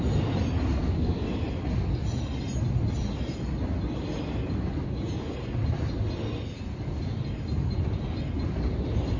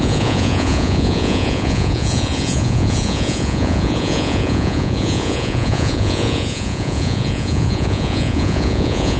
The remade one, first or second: second